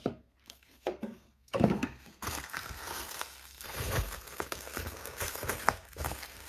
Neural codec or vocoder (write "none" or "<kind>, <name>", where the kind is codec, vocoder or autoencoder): codec, SNAC